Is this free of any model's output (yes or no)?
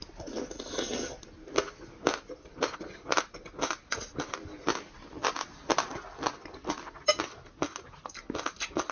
yes